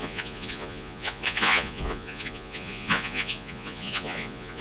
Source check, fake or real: fake